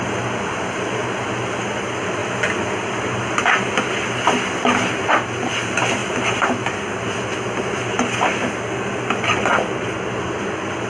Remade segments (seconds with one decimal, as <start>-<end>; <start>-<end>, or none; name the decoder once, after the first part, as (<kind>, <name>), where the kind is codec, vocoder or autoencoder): 6.0-7.1 (vocoder, BigVGAN v2)